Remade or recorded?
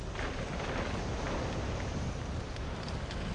recorded